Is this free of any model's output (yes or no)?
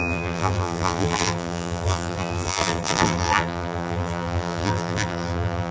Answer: no